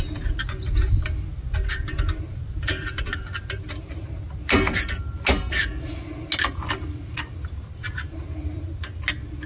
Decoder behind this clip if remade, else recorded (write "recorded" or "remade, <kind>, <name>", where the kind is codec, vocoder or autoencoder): recorded